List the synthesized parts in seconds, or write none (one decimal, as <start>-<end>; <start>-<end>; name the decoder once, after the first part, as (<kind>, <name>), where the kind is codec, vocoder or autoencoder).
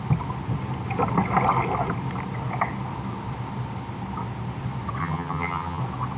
5.0-5.8 (vocoder, HiFi-GAN)